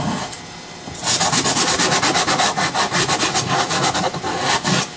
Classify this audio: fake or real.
real